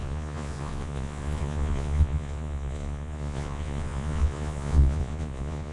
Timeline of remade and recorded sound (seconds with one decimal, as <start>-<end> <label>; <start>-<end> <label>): 0.0-5.7 remade